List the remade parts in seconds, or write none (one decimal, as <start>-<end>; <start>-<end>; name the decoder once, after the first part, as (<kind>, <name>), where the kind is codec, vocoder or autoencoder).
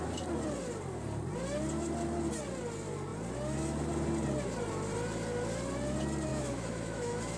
6.3-7.4 (autoencoder, DAC-VAE)